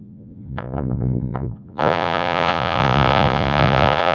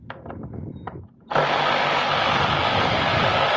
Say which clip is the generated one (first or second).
first